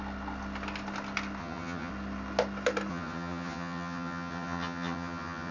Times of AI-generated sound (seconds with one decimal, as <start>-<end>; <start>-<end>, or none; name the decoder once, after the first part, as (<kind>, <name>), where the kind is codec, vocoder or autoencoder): 1.4-1.9 (vocoder, HiFi-GAN); 2.9-5.5